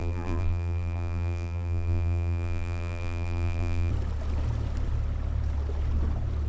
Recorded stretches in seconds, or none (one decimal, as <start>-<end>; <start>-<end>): 3.9-6.5